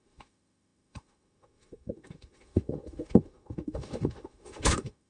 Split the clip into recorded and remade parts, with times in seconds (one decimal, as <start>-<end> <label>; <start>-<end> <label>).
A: 0.0-5.1 remade